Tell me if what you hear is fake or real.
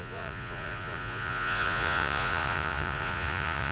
fake